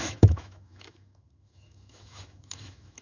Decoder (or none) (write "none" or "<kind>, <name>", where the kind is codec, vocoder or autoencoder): autoencoder, DAC-VAE